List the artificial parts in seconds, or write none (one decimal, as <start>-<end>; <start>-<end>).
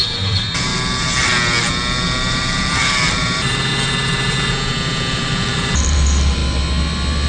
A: 0.0-0.7; 2.3-3.7; 5.1-6.4